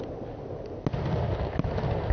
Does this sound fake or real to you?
real